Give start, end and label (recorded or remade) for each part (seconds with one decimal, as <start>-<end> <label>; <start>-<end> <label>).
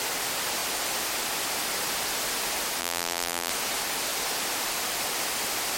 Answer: 0.0-2.8 recorded; 2.8-3.5 remade; 3.5-5.8 recorded